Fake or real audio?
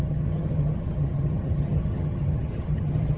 fake